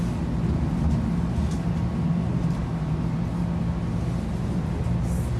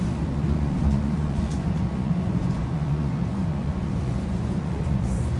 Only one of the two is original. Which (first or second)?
first